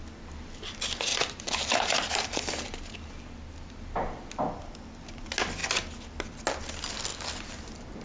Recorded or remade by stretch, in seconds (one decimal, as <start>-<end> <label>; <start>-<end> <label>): 0.0-1.1 recorded; 1.1-3.1 remade; 3.1-8.0 recorded